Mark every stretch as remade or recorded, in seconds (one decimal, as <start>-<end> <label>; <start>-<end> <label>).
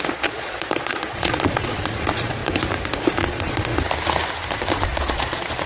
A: 0.0-2.4 remade; 2.4-3.2 recorded; 3.2-3.7 remade; 3.7-4.7 recorded; 4.7-5.7 remade